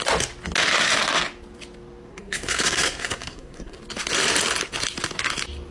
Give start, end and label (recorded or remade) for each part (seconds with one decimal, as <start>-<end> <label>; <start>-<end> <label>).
0.0-2.1 recorded; 2.1-3.8 remade; 3.8-5.7 recorded